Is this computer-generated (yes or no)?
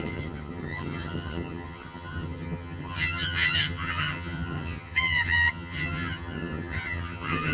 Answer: yes